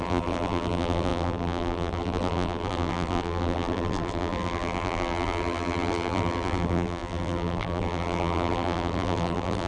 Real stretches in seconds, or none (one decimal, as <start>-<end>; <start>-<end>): none